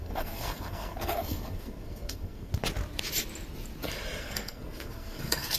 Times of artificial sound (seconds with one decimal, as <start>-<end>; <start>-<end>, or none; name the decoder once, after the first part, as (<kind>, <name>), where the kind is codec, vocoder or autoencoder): 0.0-2.5 (codec, SNAC); 4.2-5.6